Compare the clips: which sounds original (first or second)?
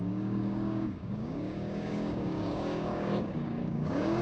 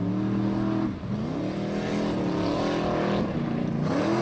second